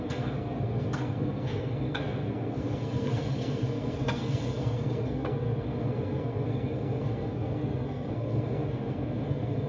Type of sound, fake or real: fake